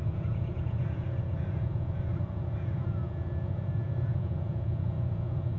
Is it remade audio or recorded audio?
remade